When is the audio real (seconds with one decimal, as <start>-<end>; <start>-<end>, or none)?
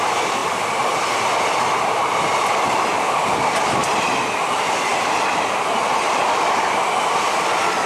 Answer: 0.4-1.8; 3.8-4.4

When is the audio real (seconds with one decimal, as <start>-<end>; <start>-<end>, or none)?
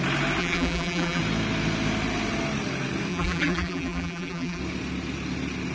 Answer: 0.0-0.4; 1.2-3.1; 4.6-5.7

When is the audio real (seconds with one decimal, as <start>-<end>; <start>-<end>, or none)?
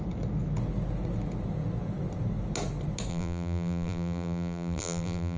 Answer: 0.0-3.1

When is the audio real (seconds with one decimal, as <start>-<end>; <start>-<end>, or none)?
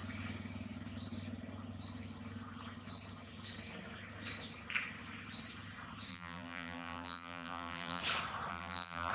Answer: 0.0-6.1; 8.0-8.5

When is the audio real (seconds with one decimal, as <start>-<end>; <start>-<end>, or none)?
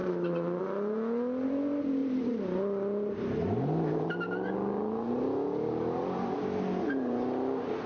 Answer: 0.6-2.0; 3.1-7.9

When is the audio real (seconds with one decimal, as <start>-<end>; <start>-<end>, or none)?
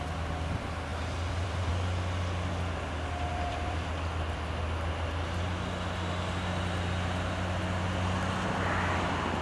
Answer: 0.0-0.9; 1.7-3.3; 3.9-9.4